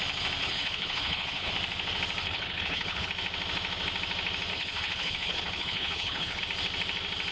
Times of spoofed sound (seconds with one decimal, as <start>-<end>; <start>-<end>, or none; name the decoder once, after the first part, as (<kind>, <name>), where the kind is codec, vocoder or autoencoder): 0.4-1.5 (codec, HILCodec); 2.2-3.1; 4.5-6.4